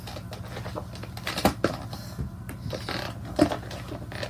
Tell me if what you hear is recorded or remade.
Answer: recorded